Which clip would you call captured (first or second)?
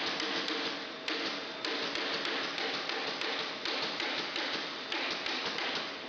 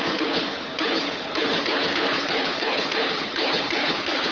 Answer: first